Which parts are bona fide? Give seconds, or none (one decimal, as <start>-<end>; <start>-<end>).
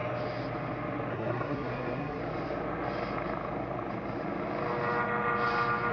0.0-1.1; 2.2-5.9